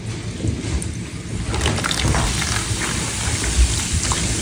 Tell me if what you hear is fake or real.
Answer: real